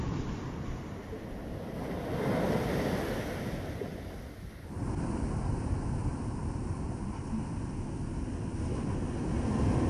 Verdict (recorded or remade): recorded